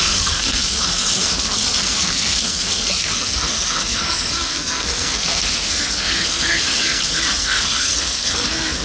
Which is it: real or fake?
fake